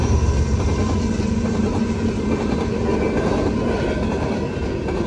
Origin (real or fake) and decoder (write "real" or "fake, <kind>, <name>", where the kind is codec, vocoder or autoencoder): real